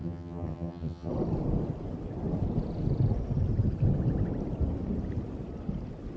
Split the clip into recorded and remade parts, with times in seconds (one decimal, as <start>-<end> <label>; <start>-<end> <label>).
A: 0.0-1.1 remade; 1.1-6.2 recorded

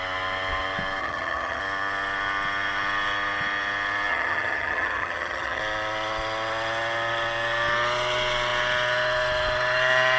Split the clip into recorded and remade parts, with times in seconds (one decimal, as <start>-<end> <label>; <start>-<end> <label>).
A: 0.0-1.0 recorded; 1.0-1.6 remade; 1.6-4.1 recorded; 4.1-5.6 remade; 5.6-10.2 recorded

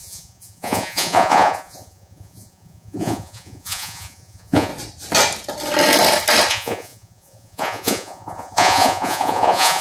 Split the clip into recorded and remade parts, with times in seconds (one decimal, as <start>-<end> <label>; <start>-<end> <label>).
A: 0.0-4.7 remade; 4.7-6.5 recorded; 6.5-9.8 remade

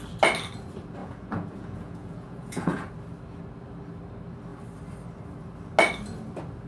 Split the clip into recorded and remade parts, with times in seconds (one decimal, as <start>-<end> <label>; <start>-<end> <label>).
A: 0.0-1.0 recorded; 1.0-2.9 remade; 2.9-6.7 recorded

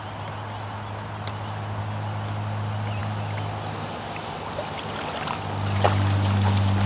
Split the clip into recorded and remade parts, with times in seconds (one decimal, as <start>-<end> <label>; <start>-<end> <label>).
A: 0.0-6.9 recorded

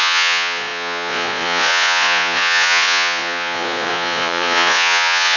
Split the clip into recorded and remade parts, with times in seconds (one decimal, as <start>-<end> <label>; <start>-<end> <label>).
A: 0.0-5.4 remade